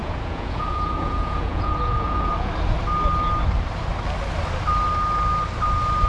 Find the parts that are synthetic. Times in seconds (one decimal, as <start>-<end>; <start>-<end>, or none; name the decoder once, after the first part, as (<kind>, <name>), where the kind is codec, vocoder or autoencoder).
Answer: 0.0-2.5 (vocoder, Vocos)